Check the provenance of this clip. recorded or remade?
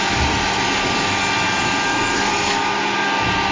recorded